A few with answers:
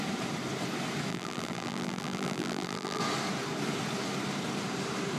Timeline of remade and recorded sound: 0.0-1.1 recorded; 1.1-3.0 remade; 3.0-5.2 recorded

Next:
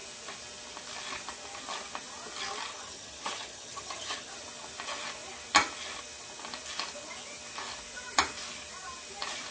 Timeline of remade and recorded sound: 0.0-2.7 recorded; 2.7-4.3 remade; 4.3-9.5 recorded

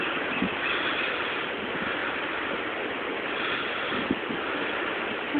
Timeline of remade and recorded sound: 0.0-5.4 recorded

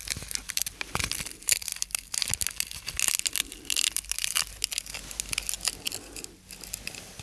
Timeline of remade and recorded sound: 0.0-7.2 recorded

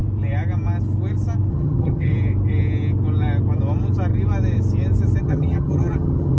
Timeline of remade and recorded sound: 0.0-1.5 recorded; 1.5-2.1 remade; 2.1-5.2 recorded; 5.2-6.4 remade

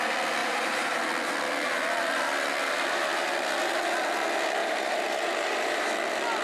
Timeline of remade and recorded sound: 0.0-0.4 recorded; 0.4-1.0 remade; 1.0-4.6 recorded; 4.6-5.9 remade; 5.9-6.4 recorded

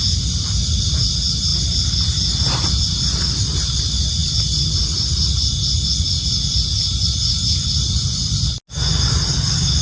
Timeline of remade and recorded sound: 0.0-9.8 recorded

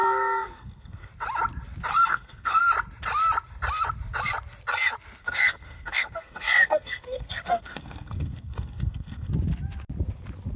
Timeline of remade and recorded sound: 0.0-1.1 remade; 1.1-1.9 recorded; 1.9-2.6 remade; 2.6-5.2 recorded; 5.2-9.3 remade; 9.3-10.6 recorded